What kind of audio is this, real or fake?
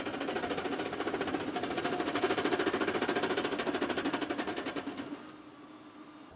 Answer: real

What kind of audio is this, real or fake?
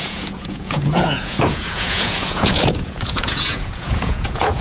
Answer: fake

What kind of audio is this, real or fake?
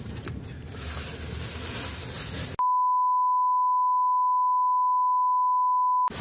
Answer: real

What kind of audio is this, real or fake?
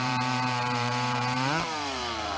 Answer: fake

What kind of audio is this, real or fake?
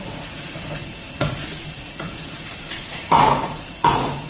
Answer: fake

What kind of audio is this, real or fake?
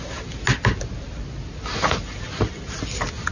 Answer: real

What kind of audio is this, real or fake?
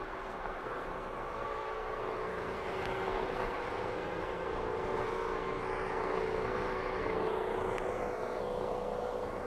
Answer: fake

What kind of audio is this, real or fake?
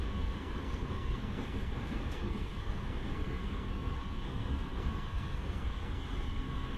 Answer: fake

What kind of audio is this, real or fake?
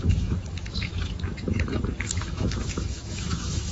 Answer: fake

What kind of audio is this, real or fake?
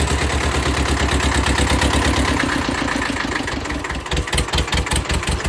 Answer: real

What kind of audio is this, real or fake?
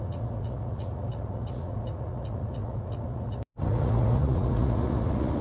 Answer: fake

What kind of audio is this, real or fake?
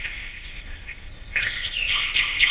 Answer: fake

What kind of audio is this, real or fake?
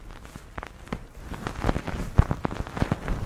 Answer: real